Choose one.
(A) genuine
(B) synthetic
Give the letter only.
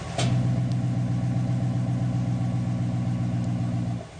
A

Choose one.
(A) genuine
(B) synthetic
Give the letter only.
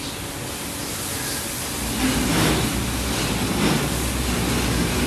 A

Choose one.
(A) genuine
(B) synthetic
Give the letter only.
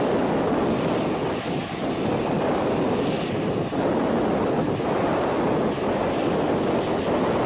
A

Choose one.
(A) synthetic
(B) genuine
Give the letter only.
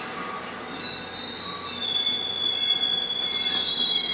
B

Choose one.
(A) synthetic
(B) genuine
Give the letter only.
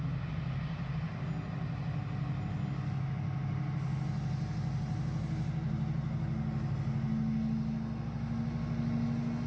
B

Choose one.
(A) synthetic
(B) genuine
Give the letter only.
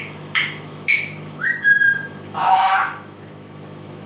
A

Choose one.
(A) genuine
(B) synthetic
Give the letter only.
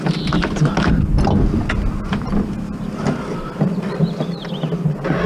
A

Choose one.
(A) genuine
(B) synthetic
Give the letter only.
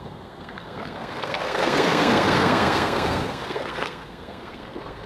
B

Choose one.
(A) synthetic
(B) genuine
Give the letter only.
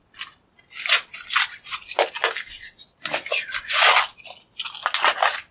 B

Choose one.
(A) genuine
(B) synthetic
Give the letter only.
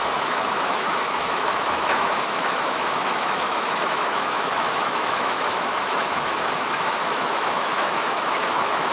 B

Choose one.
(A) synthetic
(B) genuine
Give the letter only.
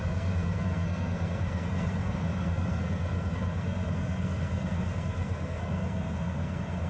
A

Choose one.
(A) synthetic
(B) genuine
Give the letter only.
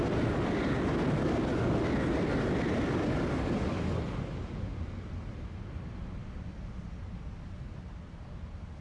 B